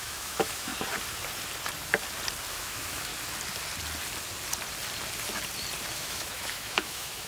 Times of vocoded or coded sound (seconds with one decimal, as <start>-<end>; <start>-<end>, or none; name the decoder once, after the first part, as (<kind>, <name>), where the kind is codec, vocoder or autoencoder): 0.0-0.7 (autoencoder, DAC-VAE); 2.5-3.1; 5.9-7.3

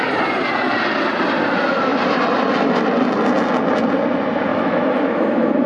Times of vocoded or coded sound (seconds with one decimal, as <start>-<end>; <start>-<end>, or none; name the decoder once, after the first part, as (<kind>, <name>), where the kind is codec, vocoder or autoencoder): 4.5-5.7 (autoencoder, DAC-VAE)

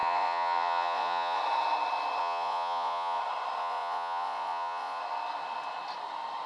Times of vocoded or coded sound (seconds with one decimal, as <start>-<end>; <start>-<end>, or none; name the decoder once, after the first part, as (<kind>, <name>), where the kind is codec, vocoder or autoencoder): 0.0-1.4 (vocoder, Vocos); 2.2-3.2; 3.6-5.0